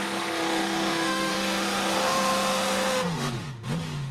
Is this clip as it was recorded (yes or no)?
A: no